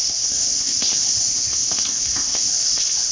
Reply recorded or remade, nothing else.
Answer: remade